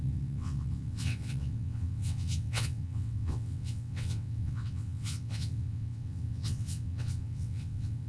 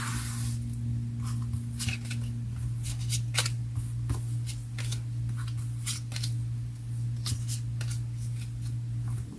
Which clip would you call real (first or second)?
second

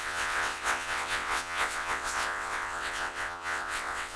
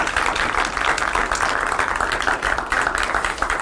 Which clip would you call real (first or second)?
second